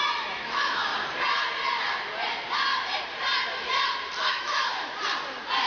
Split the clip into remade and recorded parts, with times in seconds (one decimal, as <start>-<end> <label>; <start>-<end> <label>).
0.0-0.9 remade; 0.9-4.3 recorded; 4.3-4.7 remade; 4.7-5.7 recorded